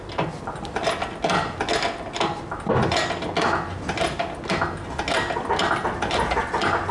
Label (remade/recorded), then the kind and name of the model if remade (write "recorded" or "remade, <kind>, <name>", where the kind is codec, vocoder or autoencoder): recorded